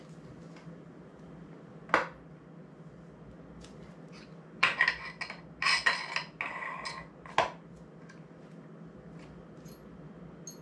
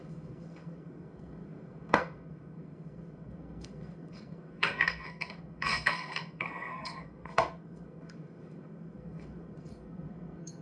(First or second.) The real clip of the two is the first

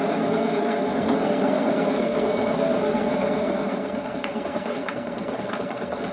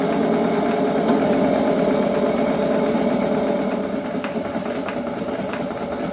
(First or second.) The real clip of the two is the second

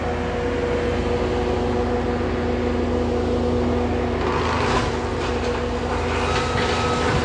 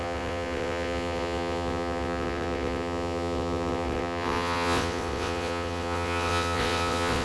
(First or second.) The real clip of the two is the first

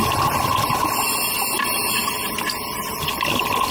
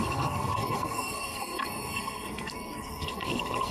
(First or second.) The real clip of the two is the first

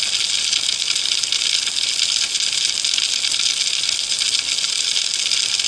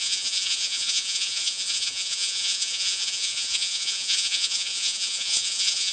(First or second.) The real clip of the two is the first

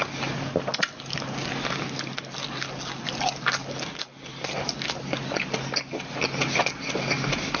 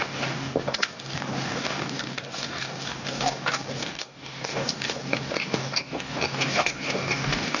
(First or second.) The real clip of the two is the first